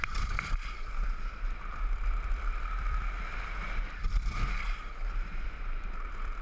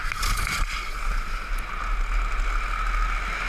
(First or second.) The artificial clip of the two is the first